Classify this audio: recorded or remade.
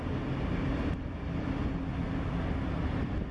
recorded